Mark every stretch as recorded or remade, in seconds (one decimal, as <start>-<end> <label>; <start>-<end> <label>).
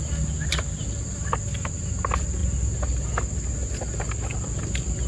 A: 0.0-5.1 recorded